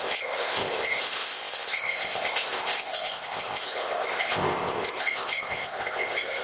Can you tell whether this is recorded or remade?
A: remade